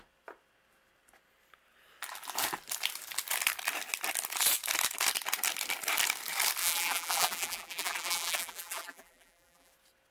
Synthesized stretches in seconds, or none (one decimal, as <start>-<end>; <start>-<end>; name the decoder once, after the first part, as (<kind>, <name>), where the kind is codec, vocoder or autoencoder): 6.6-9.7 (vocoder, BigVGAN v2)